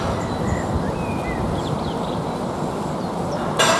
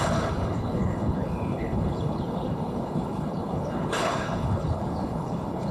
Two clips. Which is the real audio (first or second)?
first